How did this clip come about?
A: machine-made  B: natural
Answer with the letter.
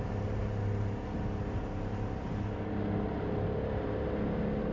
B